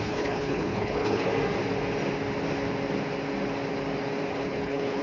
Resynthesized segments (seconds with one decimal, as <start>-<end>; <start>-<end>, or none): 0.0-1.3; 4.3-5.0